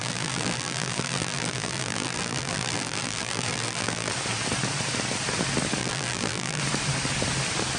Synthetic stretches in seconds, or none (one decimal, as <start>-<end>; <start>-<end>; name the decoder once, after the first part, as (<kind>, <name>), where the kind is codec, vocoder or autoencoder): 0.0-4.1 (vocoder, BigVGAN v2); 5.8-6.6